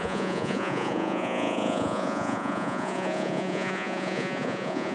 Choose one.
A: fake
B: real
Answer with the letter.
A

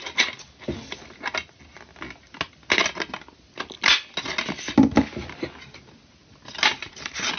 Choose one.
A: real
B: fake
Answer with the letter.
A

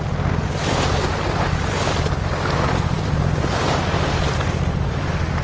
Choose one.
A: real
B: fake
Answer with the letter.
A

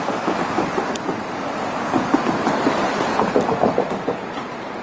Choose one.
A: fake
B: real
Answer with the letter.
B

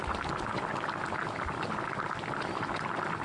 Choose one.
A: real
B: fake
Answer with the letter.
A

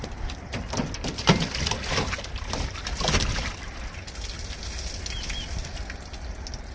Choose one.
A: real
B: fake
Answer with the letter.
A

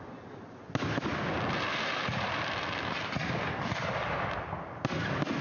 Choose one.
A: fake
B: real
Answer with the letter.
B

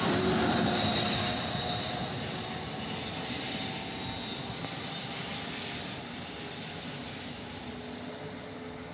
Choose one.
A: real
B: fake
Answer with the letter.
A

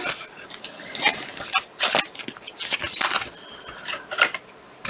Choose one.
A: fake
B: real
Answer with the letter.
B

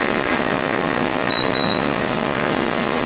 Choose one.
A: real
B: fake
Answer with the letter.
B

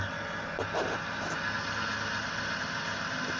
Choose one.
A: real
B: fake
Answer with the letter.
A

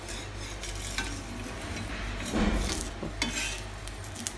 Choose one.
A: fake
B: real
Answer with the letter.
B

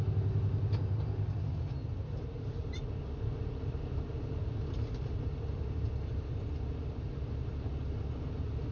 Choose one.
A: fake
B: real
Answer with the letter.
B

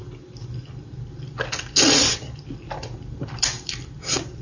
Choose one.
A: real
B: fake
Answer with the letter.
A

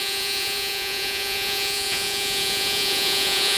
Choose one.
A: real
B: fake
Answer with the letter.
B